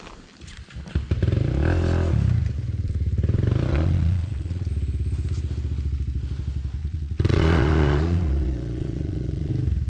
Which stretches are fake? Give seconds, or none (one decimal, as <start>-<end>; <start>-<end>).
3.7-4.7; 6.8-9.5